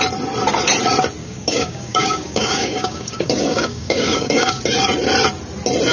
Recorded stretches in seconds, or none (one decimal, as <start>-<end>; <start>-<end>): 0.0-1.2; 4.6-5.9